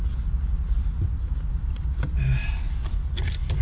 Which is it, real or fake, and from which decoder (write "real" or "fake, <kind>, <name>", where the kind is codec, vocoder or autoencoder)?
real